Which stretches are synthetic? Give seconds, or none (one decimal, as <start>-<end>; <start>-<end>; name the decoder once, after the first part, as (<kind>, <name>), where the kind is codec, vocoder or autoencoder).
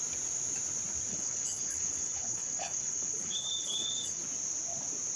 1.1-4.2 (codec, HILCodec)